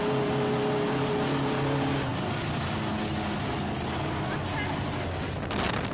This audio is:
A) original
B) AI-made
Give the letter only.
A